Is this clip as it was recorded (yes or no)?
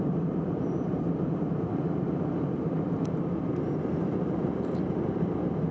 no